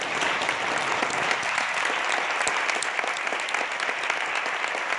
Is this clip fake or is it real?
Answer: real